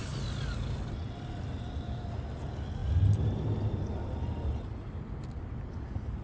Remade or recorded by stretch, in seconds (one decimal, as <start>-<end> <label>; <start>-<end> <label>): 0.0-6.2 recorded